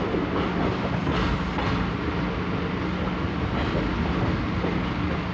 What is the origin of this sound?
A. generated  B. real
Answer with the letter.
B